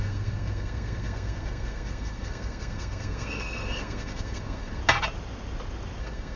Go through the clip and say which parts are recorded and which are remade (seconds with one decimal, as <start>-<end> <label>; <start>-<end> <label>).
0.0-4.8 remade; 4.8-6.0 recorded; 6.0-6.4 remade